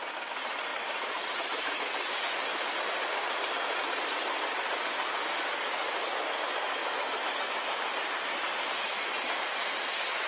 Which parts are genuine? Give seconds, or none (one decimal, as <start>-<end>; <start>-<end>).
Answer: 0.0-0.7; 1.3-2.5; 3.5-10.3